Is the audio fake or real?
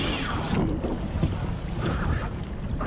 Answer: real